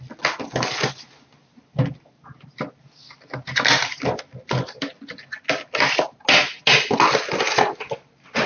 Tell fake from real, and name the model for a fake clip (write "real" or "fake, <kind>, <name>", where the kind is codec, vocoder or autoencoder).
real